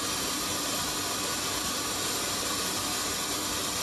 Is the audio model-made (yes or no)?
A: no